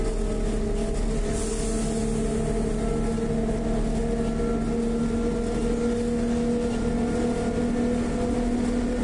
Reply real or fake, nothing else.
real